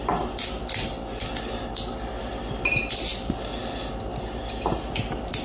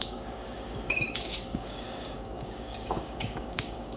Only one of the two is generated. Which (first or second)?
second